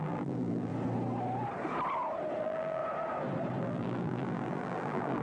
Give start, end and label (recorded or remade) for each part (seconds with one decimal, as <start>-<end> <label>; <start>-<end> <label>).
0.0-0.7 remade; 0.7-2.4 recorded; 2.4-2.8 remade; 2.8-3.6 recorded; 3.6-5.2 remade